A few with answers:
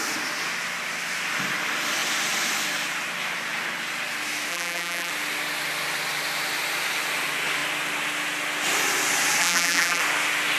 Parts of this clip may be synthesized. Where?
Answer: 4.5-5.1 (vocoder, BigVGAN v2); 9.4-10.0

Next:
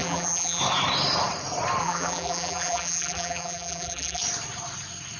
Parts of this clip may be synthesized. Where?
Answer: 0.0-0.6 (vocoder, BigVGAN v2); 1.8-4.2

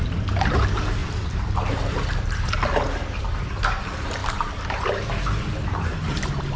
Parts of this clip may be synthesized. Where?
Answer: 0.0-1.0 (vocoder, BigVGAN v2); 3.2-6.6

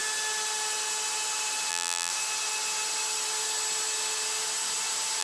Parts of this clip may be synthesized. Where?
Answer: 1.7-2.1 (vocoder, BigVGAN v2)

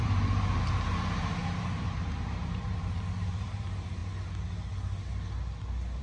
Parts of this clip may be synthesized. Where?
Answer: 0.0-4.0 (vocoder, BigVGAN v2)